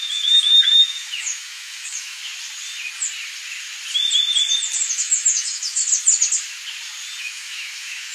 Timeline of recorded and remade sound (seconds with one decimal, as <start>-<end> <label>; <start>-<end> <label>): 0.0-2.2 remade; 2.2-4.9 recorded; 4.9-5.8 remade; 5.8-7.2 recorded; 7.2-8.1 remade